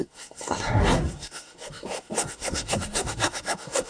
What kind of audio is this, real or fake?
fake